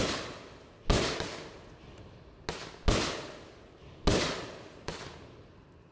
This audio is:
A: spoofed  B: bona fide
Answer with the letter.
B